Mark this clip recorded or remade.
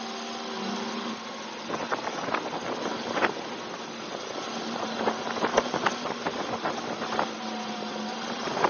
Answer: recorded